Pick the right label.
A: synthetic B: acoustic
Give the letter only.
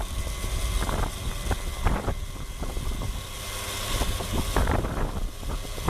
B